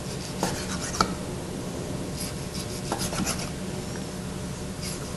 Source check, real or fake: real